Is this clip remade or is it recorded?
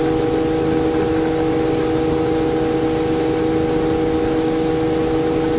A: recorded